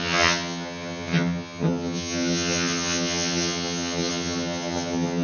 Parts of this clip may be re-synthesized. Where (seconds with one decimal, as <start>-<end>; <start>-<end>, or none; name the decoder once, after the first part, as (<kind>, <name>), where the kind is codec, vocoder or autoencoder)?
0.0-5.2 (vocoder, HiFi-GAN)